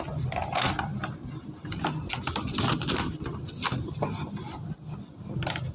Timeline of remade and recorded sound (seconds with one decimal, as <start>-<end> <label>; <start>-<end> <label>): 0.0-5.7 recorded

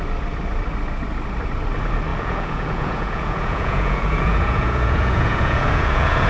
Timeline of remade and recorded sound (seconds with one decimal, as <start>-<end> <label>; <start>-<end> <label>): 0.0-2.1 recorded; 2.1-6.3 remade

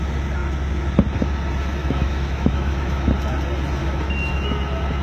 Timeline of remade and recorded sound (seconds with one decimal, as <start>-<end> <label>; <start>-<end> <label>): 0.0-1.8 recorded; 1.8-3.1 remade; 3.1-3.8 recorded; 3.8-4.3 remade; 4.3-5.0 recorded

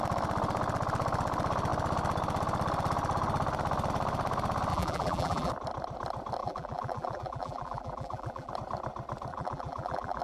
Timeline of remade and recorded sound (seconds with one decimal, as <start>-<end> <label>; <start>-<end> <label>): 0.0-4.7 recorded; 4.7-5.5 remade; 5.5-6.4 recorded; 6.4-8.5 remade; 8.5-9.3 recorded; 9.3-10.2 remade